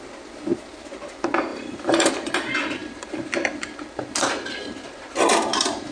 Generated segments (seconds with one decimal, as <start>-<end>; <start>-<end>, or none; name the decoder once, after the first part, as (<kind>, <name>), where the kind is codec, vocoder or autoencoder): 1.5-2.3 (vocoder, BigVGAN v2)